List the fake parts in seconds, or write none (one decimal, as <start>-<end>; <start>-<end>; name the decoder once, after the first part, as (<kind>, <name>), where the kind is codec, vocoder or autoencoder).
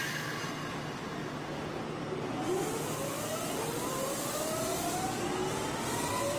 none